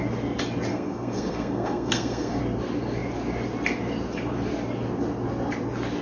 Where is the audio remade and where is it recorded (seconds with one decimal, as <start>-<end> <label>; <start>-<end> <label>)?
0.0-0.7 recorded; 0.7-2.4 remade; 2.4-6.0 recorded